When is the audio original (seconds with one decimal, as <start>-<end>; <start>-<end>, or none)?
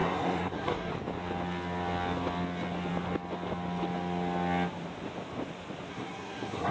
0.9-5.9